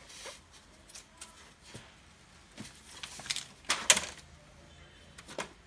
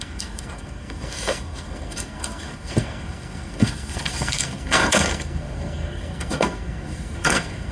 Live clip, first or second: first